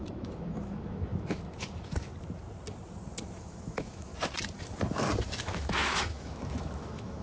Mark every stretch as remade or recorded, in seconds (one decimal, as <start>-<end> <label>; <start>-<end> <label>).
0.0-2.1 remade; 2.1-3.4 recorded; 3.4-4.1 remade; 4.1-5.4 recorded; 5.4-7.2 remade